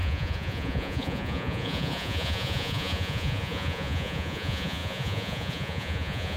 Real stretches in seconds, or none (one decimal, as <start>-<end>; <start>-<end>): none